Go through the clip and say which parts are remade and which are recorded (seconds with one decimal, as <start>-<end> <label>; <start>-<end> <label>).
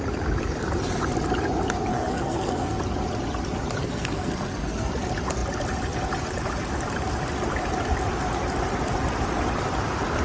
0.0-1.9 recorded; 1.9-2.8 remade; 2.8-3.8 recorded; 3.8-4.9 remade; 4.9-10.2 recorded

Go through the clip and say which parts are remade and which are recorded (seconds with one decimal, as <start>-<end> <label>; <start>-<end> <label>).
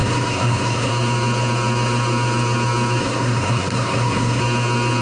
0.0-0.9 remade; 0.9-3.0 recorded; 3.0-4.4 remade; 4.4-5.0 recorded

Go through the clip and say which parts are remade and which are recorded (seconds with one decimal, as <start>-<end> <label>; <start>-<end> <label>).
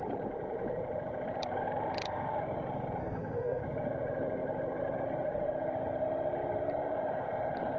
0.0-3.0 recorded; 3.0-3.6 remade; 3.6-7.8 recorded